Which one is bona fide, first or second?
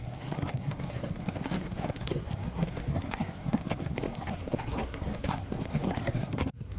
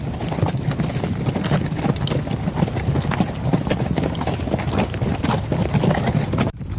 second